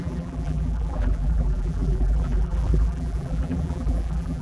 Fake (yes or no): yes